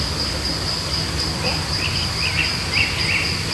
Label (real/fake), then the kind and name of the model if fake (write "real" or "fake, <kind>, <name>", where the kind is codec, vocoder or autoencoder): real